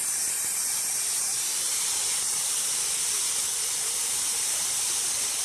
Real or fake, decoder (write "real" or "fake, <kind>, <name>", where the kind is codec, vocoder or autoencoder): real